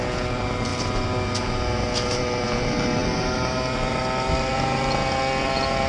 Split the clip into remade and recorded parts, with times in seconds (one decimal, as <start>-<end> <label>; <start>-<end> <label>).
0.0-5.9 recorded